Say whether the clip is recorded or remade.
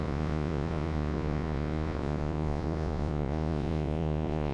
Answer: remade